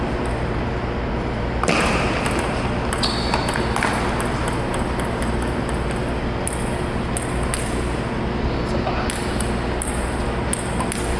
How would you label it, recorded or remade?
recorded